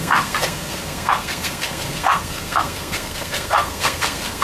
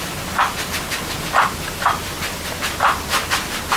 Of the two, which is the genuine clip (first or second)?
second